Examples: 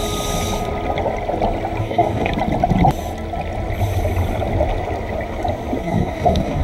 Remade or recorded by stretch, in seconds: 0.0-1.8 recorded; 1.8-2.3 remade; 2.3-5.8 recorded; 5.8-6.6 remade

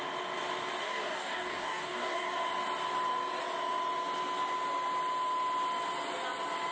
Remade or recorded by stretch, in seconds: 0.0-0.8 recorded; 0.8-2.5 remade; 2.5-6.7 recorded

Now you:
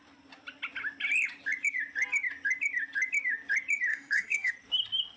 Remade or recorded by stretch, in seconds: 0.0-3.9 recorded; 3.9-4.5 remade; 4.5-5.2 recorded

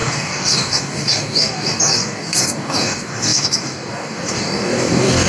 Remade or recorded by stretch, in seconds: 0.0-5.3 remade

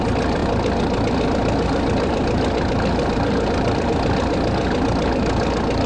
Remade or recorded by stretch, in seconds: 0.0-5.9 recorded

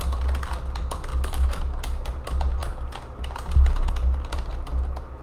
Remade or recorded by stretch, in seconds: 0.0-1.1 recorded; 1.1-1.6 remade; 1.6-5.2 recorded

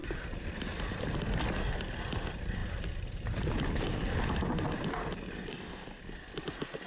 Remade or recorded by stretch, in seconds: 0.0-5.5 recorded; 5.5-6.0 remade; 6.0-6.9 recorded

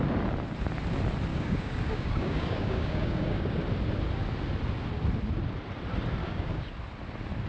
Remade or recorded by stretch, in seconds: 0.0-1.3 recorded; 1.3-3.6 remade; 3.6-6.2 recorded; 6.2-6.7 remade; 6.7-7.5 recorded